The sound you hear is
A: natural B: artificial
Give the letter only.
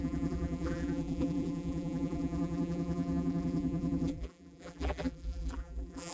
B